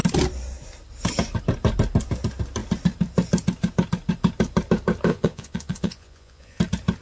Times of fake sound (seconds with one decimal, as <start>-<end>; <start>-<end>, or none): 5.1-6.6